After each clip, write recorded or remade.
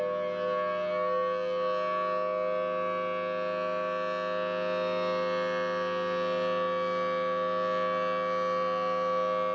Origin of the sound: recorded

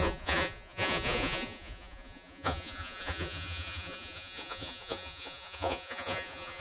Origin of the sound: remade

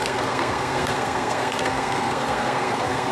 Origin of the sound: remade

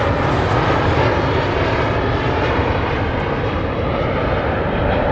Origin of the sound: recorded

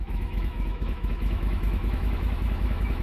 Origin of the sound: remade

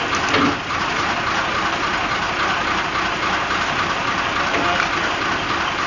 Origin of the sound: recorded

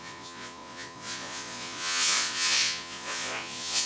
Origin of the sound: remade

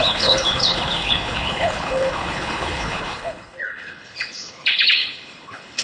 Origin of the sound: remade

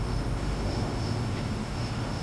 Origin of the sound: remade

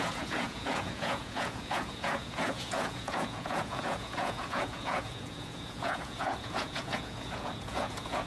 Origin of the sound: remade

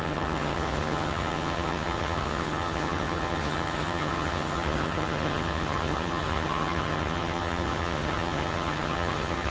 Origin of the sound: remade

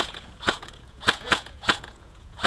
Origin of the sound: remade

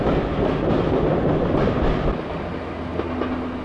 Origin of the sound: recorded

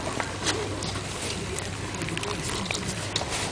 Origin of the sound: remade